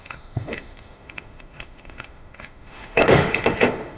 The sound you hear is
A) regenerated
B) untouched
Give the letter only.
A